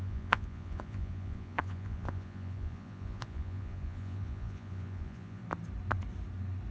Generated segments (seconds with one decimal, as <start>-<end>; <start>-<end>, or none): 0.0-5.4